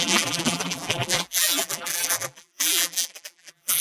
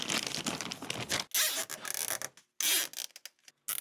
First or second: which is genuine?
second